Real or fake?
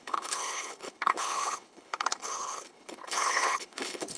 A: fake